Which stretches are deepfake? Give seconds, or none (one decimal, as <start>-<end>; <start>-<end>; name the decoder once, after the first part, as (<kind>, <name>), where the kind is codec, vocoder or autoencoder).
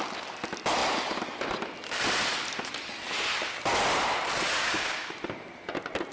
4.6-5.1 (codec, DAC)